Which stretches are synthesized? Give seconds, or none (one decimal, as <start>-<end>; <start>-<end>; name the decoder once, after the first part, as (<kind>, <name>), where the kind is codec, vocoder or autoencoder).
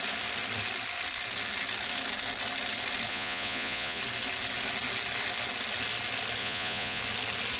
3.1-4.0 (vocoder, Vocos); 6.4-7.0